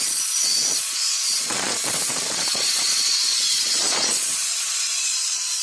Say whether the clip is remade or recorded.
remade